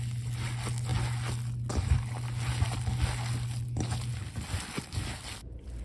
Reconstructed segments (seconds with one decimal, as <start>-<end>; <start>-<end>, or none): none